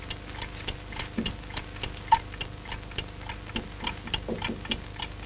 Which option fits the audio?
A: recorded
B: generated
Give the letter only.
A